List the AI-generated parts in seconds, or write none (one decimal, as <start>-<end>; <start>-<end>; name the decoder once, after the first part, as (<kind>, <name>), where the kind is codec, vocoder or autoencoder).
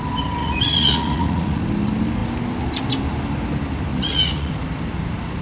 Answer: 0.4-1.6 (vocoder, Vocos); 3.9-4.5